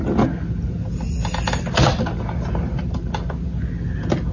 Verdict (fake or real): real